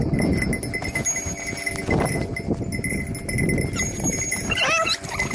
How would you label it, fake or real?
real